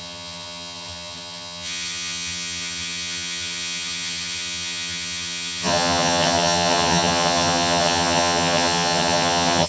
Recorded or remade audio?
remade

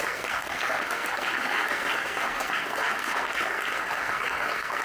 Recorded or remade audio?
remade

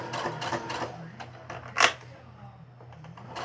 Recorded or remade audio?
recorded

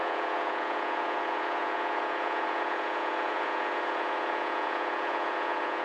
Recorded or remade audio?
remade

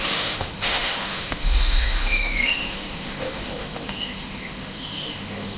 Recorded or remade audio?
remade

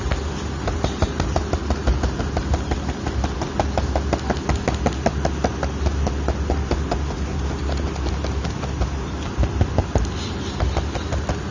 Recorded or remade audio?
recorded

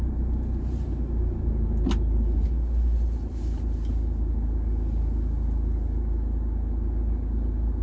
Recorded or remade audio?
recorded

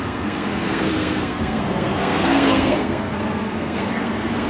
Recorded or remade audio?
remade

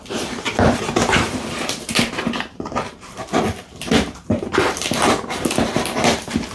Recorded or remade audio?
remade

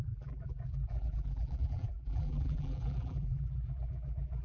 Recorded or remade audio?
remade